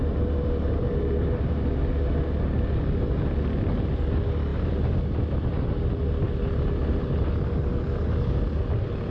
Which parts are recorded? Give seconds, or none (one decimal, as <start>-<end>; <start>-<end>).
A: 0.0-9.1